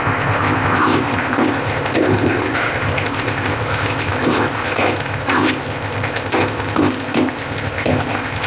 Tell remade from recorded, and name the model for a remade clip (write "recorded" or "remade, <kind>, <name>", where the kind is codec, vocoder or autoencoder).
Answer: remade, codec, ZipCodec